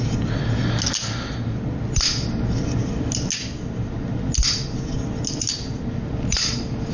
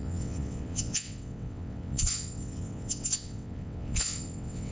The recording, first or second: first